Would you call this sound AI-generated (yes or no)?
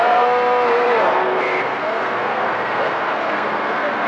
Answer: yes